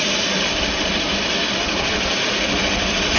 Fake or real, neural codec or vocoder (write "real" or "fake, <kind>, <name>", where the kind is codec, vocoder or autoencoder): fake, vocoder, BigVGAN v2